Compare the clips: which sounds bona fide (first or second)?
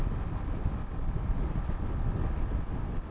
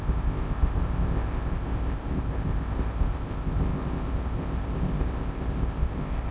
first